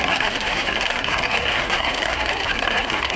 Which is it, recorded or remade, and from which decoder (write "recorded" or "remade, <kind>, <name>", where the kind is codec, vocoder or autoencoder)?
remade, codec, SNAC